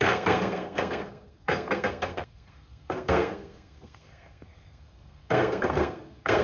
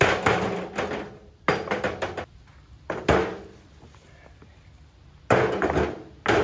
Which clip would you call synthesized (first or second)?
first